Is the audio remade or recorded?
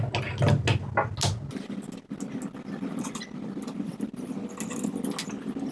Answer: recorded